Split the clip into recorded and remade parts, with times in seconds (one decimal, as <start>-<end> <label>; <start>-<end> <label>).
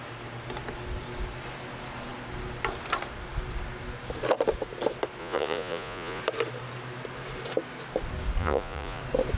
0.0-5.2 recorded; 5.2-6.2 remade; 6.2-8.4 recorded; 8.4-9.0 remade; 9.0-9.4 recorded